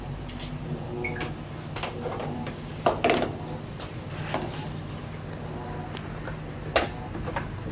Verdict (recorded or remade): recorded